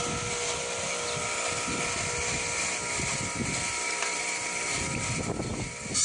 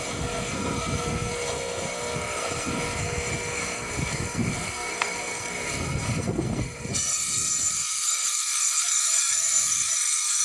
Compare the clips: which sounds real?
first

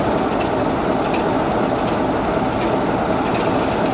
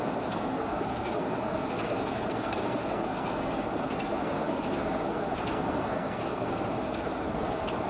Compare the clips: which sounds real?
first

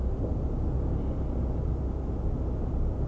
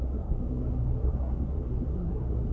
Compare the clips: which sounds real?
first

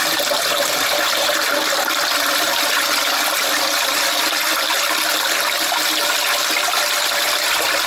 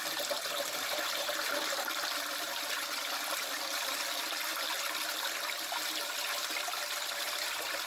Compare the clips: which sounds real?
first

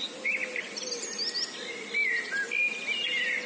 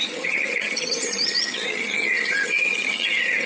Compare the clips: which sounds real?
first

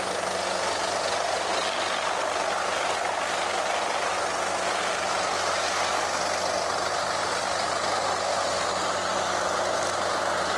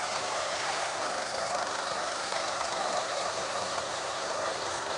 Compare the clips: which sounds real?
first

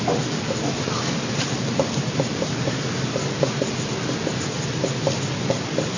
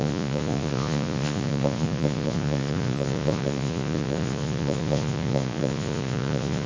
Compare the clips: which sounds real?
first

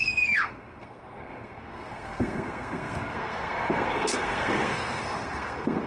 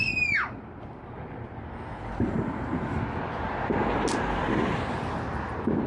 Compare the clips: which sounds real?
second